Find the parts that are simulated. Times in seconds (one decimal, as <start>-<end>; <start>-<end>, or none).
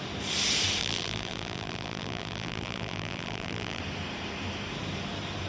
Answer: 0.8-3.8